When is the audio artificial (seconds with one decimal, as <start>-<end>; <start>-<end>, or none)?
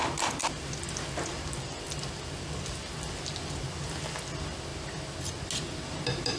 none